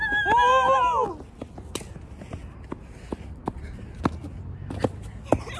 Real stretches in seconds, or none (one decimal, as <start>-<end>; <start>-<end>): 0.0-0.5; 1.1-5.6